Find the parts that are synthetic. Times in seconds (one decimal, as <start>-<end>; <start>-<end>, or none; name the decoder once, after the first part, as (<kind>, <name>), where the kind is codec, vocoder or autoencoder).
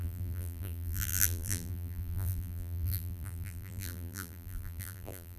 0.0-5.4 (vocoder, BigVGAN v2)